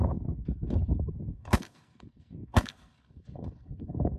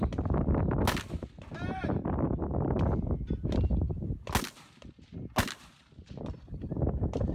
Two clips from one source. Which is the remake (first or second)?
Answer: first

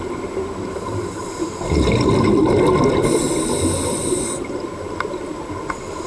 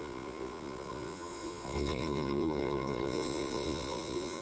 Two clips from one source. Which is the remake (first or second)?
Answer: second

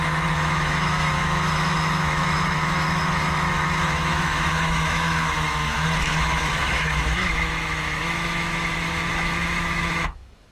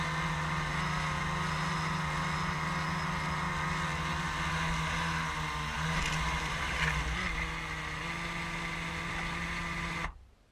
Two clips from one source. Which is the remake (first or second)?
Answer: first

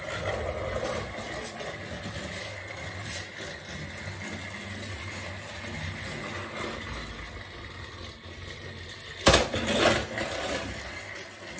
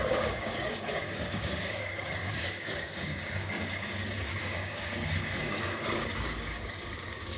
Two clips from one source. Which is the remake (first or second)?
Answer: second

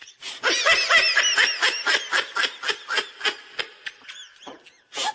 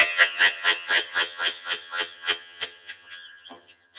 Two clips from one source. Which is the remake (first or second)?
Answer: second